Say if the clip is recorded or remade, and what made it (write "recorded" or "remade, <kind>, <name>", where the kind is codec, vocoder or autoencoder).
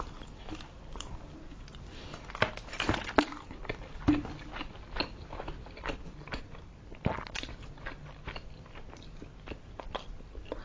recorded